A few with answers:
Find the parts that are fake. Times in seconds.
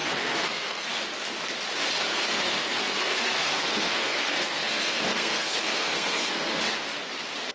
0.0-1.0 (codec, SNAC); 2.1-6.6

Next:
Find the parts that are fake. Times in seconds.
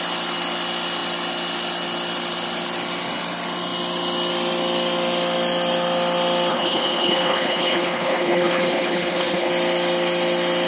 6.5-9.5 (codec, HILCodec)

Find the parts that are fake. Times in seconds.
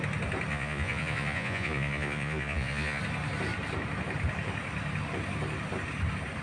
0.5-3.0 (vocoder, Vocos)